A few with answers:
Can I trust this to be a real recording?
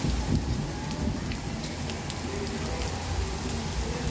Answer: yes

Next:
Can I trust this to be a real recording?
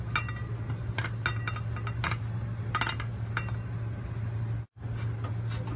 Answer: yes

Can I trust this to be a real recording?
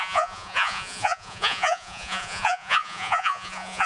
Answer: no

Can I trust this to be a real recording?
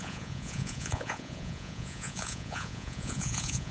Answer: no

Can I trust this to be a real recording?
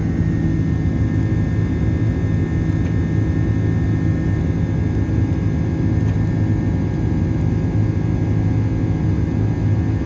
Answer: yes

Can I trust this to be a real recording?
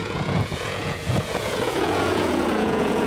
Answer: no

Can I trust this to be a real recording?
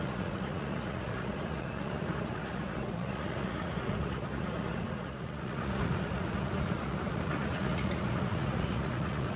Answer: no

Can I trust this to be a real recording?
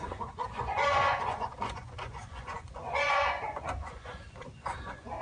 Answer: no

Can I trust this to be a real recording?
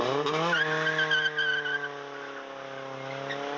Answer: yes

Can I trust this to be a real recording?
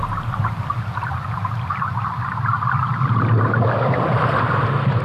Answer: yes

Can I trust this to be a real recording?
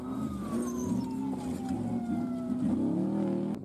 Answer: yes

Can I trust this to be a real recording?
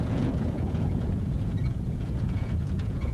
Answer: no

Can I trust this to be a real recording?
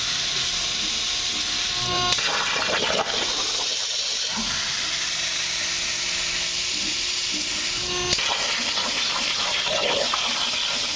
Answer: yes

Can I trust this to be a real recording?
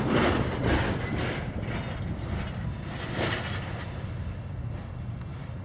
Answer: yes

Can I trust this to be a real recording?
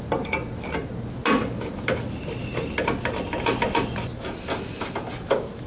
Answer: yes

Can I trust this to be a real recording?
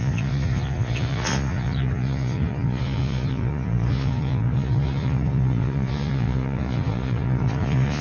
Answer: no